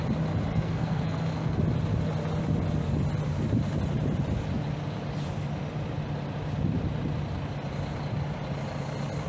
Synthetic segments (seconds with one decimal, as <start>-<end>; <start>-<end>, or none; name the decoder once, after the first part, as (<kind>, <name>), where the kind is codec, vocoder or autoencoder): 0.5-1.6 (codec, SNAC)